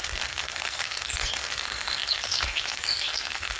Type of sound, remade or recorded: remade